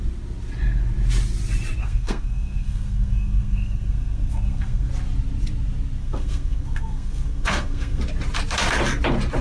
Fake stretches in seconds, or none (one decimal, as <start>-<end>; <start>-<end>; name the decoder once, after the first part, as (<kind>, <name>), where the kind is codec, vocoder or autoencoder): 1.8-4.9 (codec, SNAC); 6.0-8.0